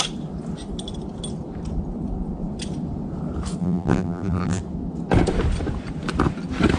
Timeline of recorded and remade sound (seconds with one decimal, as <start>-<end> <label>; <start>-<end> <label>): 0.0-3.6 recorded; 3.6-4.6 remade; 4.6-6.8 recorded